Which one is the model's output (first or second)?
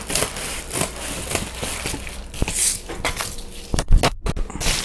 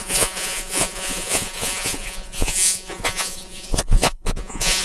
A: second